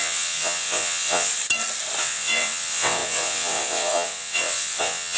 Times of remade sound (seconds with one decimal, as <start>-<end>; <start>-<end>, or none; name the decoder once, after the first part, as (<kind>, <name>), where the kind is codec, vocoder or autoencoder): 0.0-1.3 (vocoder, WaveNeXt); 2.0-5.2